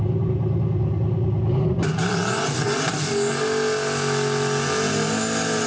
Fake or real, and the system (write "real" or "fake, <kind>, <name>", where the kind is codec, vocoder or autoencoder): real